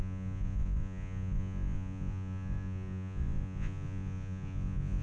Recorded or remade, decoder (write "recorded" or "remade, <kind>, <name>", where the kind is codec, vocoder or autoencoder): remade, vocoder, Vocos